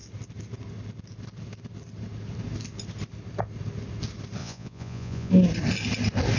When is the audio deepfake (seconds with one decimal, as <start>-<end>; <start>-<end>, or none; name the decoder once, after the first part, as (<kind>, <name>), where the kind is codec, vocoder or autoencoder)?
4.4-5.3 (vocoder, Vocos)